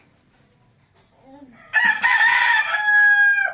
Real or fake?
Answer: real